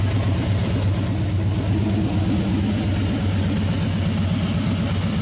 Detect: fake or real real